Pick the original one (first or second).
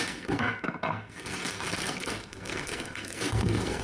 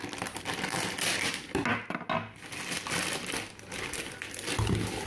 second